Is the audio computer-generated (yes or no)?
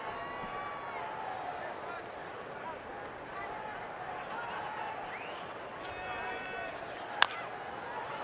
no